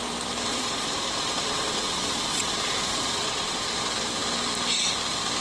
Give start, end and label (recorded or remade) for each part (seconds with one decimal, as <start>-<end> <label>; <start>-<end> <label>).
0.0-0.5 recorded; 0.5-3.7 remade; 3.7-5.4 recorded